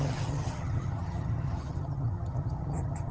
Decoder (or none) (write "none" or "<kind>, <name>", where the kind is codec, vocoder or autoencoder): vocoder, HiFi-GAN